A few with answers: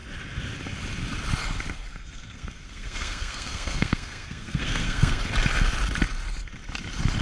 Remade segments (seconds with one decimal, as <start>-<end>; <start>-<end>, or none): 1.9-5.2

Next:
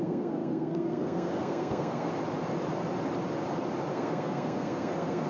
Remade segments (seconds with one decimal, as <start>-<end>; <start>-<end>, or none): 0.0-2.1; 3.9-5.3

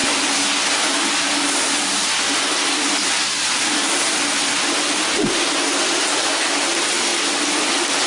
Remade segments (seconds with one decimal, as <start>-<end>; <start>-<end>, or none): none